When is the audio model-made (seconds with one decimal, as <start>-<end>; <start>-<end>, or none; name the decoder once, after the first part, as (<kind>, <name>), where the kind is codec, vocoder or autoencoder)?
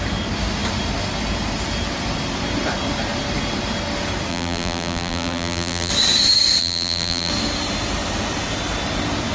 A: 4.3-5.9 (vocoder, BigVGAN v2); 6.6-7.3